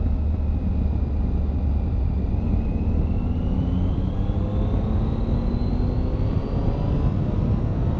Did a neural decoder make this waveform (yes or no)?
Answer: no